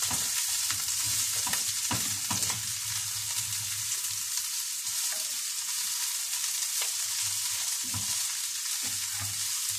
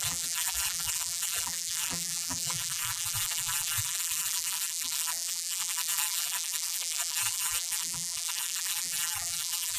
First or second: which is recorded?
first